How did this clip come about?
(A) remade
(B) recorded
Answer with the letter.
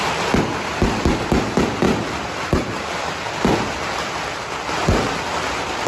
B